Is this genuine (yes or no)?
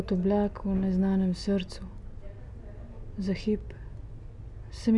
yes